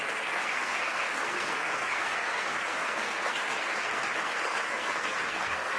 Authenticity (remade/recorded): remade